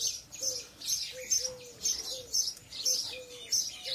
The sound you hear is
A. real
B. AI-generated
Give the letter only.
A